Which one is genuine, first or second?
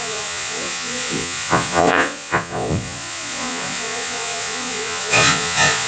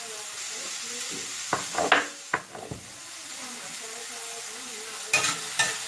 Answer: second